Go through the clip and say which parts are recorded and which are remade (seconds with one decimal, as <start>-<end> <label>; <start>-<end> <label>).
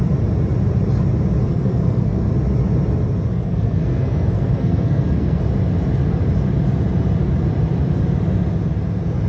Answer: 0.0-1.5 recorded; 1.5-2.3 remade; 2.3-3.3 recorded; 3.3-5.4 remade; 5.4-9.3 recorded